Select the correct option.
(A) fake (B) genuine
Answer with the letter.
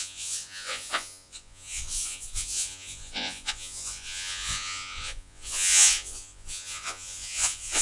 A